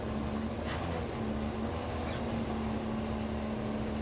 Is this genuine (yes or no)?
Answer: yes